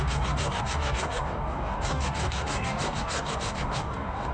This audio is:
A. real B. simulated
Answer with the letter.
B